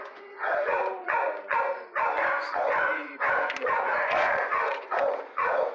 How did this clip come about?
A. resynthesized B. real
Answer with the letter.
A